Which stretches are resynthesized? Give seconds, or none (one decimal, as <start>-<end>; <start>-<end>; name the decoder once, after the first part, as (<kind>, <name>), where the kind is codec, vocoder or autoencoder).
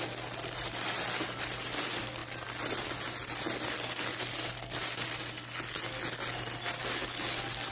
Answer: none